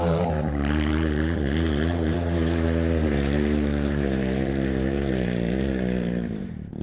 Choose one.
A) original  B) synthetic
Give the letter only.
B